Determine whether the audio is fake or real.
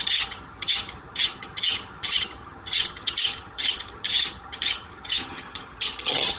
fake